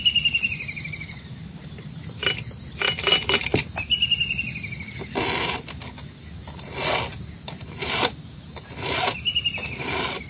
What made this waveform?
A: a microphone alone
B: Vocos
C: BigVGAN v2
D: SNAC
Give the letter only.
A